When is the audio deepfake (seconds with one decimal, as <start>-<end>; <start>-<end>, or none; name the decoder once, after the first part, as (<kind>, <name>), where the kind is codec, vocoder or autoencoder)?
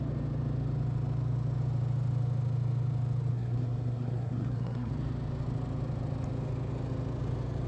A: 3.3-4.9 (codec, SNAC)